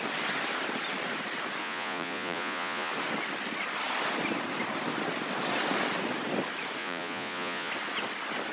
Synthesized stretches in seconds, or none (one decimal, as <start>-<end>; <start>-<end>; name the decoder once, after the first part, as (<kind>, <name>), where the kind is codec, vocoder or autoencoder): 1.6-2.9 (vocoder, Vocos); 6.8-7.7

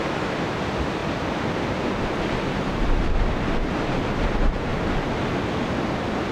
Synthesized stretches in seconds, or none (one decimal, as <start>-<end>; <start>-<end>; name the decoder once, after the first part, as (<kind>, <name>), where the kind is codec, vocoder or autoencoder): 1.0-4.3 (vocoder, BigVGAN v2)

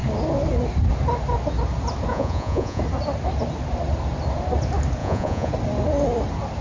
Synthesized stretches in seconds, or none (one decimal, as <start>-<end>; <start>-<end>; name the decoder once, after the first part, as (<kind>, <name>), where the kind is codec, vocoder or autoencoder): 2.1-2.8 (vocoder, Vocos); 5.0-5.5

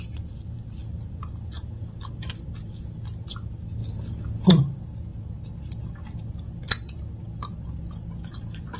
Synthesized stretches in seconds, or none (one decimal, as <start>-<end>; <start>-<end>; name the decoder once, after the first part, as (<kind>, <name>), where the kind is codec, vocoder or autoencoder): 0.0-0.8 (vocoder, BigVGAN v2); 2.6-3.8; 4.5-6.6; 7.2-8.8